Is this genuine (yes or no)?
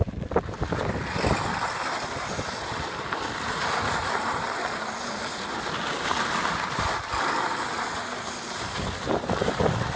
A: yes